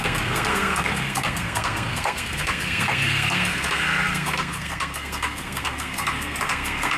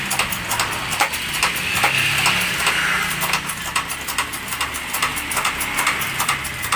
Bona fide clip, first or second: second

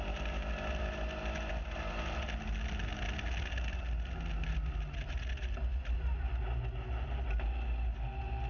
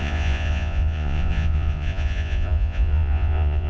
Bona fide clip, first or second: first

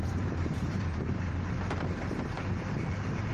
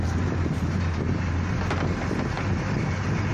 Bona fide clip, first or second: second